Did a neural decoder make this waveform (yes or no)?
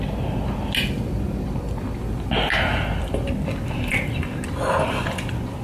no